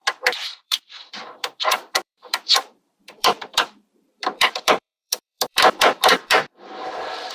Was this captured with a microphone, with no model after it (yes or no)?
no